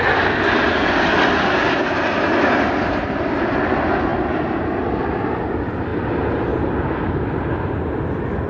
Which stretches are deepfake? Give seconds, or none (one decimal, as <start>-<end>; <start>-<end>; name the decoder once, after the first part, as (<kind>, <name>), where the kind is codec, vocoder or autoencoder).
none